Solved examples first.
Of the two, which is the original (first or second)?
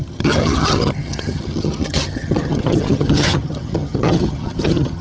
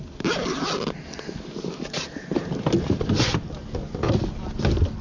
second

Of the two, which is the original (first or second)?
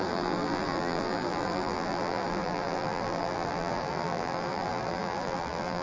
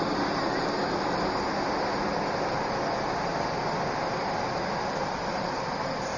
second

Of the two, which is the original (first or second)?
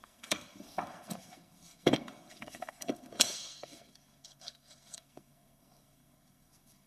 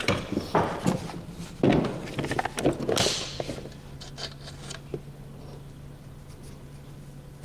second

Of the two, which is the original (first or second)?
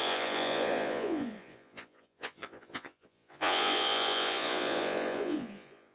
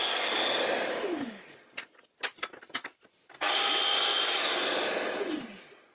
second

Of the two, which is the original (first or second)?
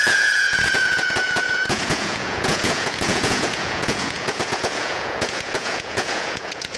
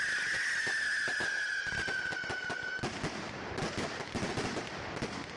second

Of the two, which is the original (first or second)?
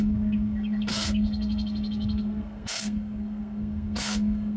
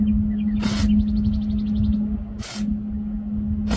second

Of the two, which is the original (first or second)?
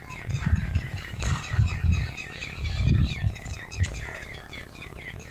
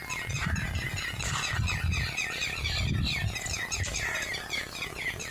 second